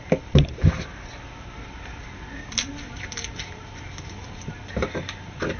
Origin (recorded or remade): recorded